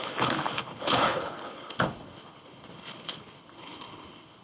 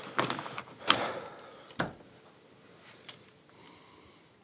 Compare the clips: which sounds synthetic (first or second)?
first